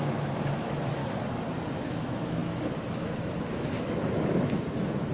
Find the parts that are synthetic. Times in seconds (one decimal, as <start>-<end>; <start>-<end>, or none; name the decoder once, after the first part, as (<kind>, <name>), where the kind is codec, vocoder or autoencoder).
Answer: 0.0-1.0 (autoencoder, DAC-VAE); 1.7-5.1